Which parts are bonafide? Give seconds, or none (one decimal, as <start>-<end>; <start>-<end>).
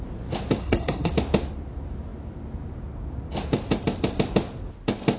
0.0-0.6; 1.1-5.2